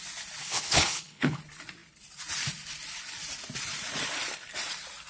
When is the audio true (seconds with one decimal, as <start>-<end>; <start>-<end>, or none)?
0.0-0.4; 1.4-5.1